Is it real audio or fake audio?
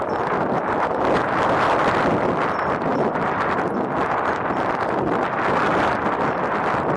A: real